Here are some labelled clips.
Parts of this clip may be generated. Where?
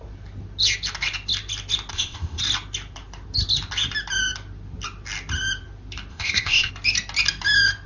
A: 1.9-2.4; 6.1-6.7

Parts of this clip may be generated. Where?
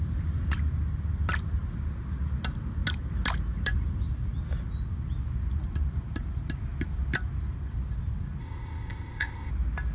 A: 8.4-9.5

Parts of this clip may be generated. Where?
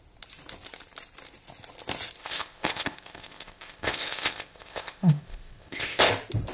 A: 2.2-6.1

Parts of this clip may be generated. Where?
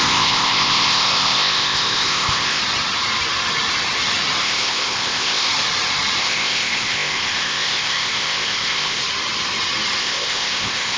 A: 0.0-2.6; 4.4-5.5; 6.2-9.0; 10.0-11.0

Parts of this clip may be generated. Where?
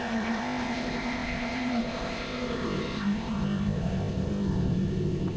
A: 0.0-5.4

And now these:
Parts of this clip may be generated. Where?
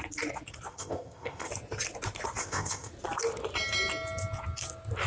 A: 0.7-1.5; 2.4-2.9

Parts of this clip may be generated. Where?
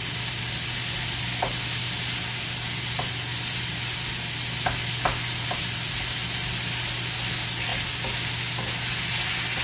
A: none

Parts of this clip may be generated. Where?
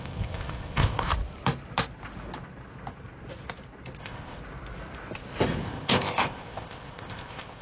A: 0.0-1.1; 4.0-4.4; 5.6-7.6